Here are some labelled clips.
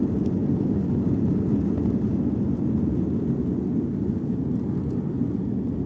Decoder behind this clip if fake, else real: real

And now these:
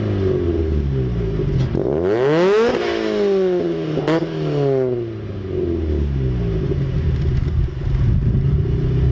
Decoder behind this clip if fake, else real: real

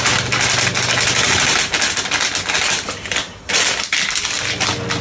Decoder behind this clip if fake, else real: real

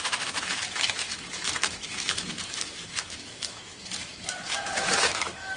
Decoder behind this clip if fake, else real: fake, autoencoder, DAC-VAE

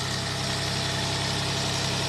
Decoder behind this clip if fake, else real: real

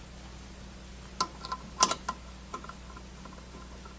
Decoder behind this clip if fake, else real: real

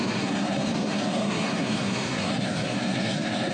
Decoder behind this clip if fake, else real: fake, codec, SNAC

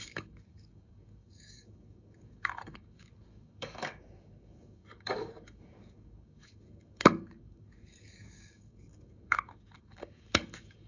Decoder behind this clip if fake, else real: fake, codec, DAC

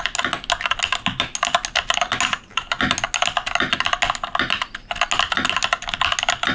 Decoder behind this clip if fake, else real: real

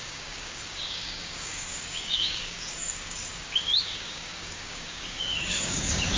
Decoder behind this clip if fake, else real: fake, codec, DAC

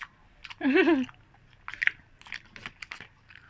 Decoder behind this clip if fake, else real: real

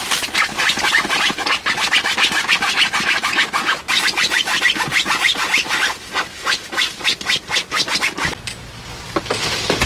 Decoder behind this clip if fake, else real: real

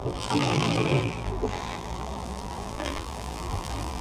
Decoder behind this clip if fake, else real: fake, vocoder, BigVGAN v2